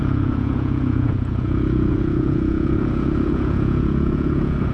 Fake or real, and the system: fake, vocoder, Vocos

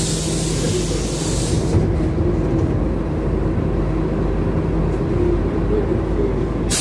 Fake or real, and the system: real